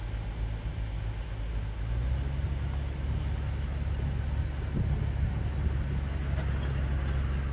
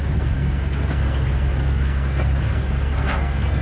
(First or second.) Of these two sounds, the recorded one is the first